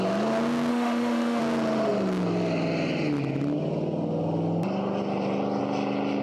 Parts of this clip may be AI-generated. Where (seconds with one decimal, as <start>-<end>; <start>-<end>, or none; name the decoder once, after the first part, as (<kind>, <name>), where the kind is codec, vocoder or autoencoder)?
0.7-1.4 (autoencoder, DAC-VAE)